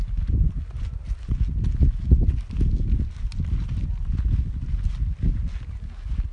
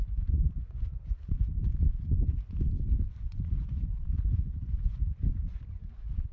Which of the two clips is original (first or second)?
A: first